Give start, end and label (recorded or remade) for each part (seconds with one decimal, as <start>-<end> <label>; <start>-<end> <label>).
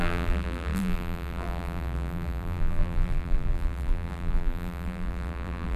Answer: 0.0-5.8 remade